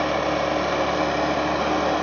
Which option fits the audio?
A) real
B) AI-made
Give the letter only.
A